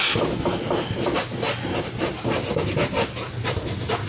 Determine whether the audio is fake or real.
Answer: real